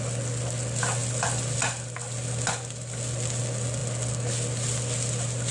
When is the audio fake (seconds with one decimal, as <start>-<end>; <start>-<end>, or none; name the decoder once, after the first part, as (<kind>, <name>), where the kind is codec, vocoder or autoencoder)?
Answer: none